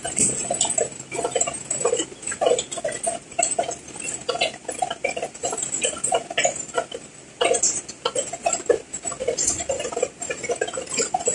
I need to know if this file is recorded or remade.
recorded